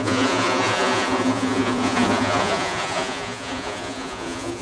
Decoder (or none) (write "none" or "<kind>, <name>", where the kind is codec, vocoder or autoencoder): vocoder, Vocos